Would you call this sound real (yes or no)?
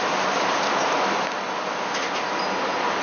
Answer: yes